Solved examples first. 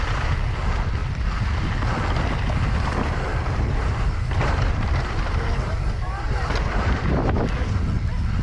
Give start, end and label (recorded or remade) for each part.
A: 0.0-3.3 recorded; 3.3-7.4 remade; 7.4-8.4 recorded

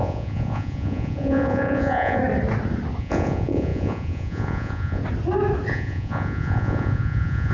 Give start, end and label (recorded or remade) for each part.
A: 0.0-2.2 remade; 2.2-3.0 recorded; 3.0-5.0 remade; 5.0-5.7 recorded; 5.7-7.5 remade

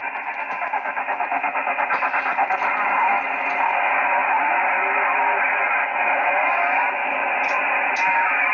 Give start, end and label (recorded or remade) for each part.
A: 0.0-8.5 recorded